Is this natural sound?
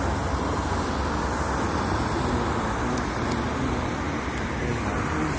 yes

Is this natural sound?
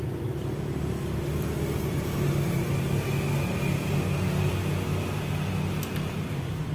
yes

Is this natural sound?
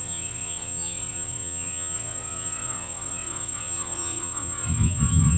no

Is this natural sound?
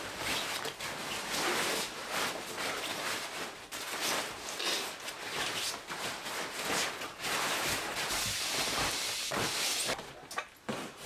yes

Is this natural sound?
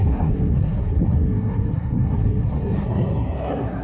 no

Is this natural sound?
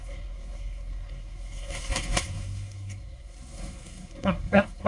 no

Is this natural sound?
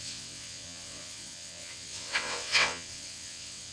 no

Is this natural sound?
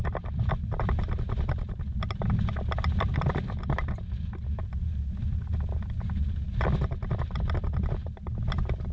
yes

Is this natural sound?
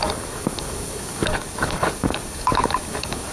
no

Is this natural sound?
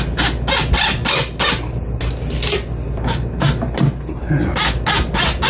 yes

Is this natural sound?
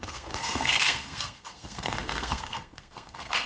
no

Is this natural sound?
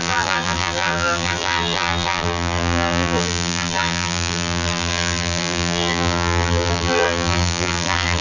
no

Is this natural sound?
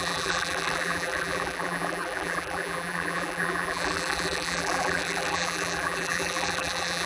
no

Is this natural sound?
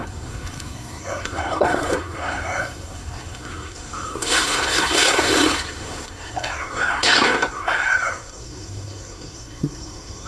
no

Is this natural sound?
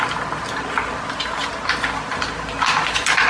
yes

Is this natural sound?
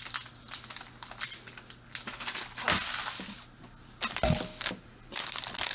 yes